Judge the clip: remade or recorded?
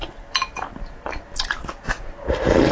recorded